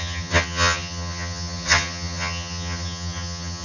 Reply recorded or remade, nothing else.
remade